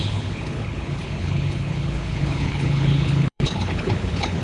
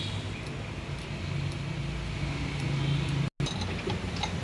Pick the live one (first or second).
second